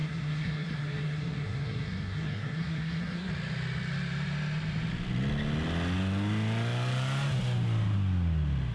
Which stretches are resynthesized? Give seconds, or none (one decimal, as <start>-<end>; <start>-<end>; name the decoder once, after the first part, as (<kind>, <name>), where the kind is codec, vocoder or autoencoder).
0.0-3.3 (codec, SNAC)